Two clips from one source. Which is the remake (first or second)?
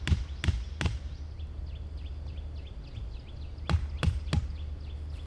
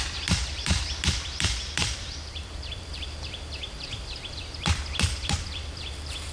second